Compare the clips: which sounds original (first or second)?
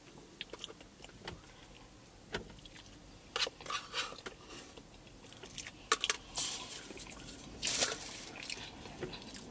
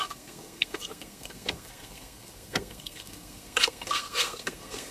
first